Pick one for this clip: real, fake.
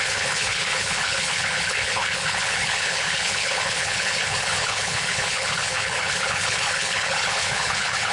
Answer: fake